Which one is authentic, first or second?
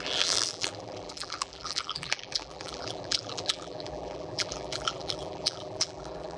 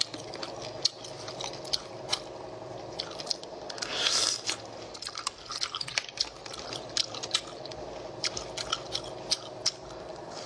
second